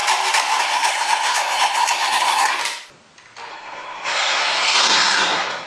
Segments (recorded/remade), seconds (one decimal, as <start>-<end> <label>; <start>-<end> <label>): 0.0-0.6 recorded; 0.6-2.6 remade; 2.6-3.5 recorded; 3.5-5.7 remade